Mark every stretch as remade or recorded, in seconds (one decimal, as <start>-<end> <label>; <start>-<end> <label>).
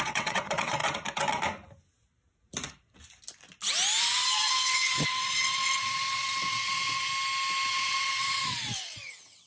0.0-0.8 remade; 0.8-4.0 recorded; 4.0-7.1 remade; 7.1-7.7 recorded; 7.7-9.5 remade